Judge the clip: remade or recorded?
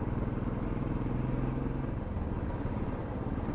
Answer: recorded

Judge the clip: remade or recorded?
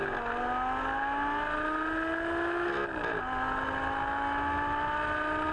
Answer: recorded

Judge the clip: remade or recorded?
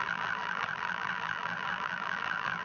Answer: remade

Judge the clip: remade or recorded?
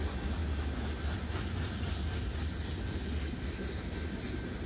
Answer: recorded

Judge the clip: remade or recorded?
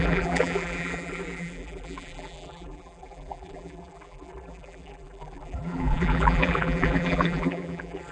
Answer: remade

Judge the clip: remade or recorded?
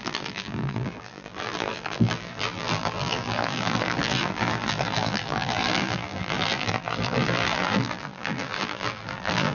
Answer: remade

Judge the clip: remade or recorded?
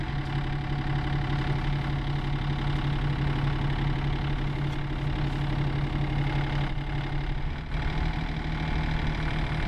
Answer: recorded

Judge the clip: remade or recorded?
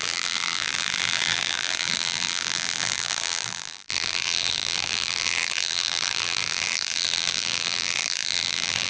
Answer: remade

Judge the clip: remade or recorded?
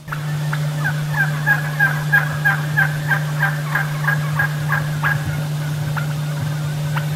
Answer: recorded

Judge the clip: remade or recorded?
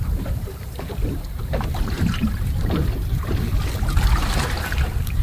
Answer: remade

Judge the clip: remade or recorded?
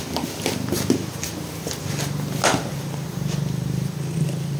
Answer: recorded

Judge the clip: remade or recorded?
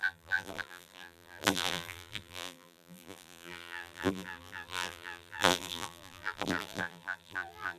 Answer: remade